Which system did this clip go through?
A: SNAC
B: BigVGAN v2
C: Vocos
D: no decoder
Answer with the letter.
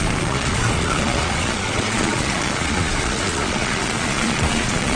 C